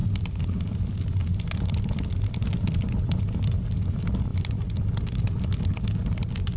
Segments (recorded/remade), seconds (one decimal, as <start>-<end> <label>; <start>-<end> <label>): 0.0-6.6 recorded